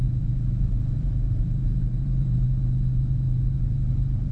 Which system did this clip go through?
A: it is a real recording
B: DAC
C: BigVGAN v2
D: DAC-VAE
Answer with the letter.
C